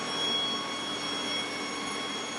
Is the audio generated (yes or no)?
no